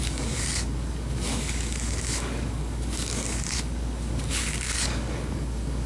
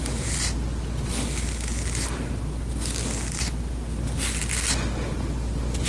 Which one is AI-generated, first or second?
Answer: first